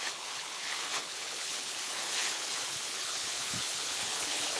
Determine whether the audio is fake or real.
fake